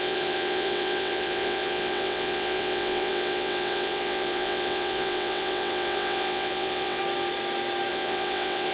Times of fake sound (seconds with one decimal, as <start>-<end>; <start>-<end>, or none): 0.0-7.0; 7.9-8.7